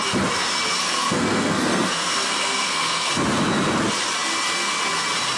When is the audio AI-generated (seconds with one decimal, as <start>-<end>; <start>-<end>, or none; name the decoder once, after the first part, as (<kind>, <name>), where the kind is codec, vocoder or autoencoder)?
0.8-3.1 (codec, SNAC)